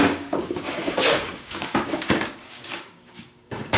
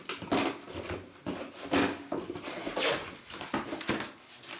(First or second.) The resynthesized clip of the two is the first